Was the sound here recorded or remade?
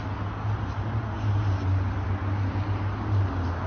recorded